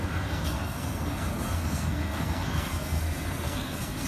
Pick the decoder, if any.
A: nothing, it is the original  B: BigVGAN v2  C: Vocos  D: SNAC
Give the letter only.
D